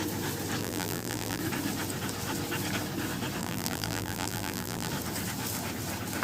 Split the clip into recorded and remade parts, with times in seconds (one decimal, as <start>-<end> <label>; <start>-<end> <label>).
0.0-0.6 recorded; 0.6-1.4 remade; 1.4-3.4 recorded; 3.4-4.9 remade; 4.9-6.2 recorded